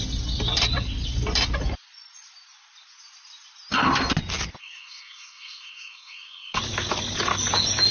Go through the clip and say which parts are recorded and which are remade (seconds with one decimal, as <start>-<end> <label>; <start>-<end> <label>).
0.0-4.6 recorded; 4.6-6.6 remade; 6.6-7.9 recorded